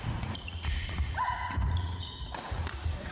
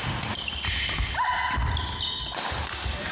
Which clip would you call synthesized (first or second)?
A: first